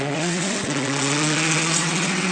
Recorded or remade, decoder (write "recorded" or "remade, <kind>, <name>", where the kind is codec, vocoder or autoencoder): remade, vocoder, WaveNeXt